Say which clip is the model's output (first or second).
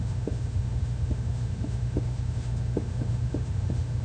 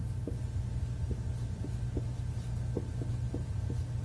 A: first